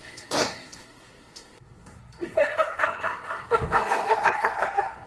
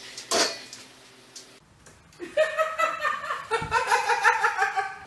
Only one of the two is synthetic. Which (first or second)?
first